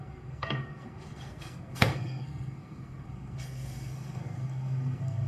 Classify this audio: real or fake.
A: fake